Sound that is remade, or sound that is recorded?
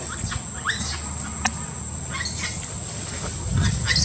recorded